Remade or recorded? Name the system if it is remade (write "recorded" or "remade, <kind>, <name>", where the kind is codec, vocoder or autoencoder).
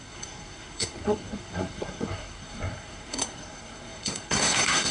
remade, codec, SNAC